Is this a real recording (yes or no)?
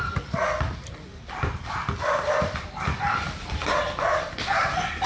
no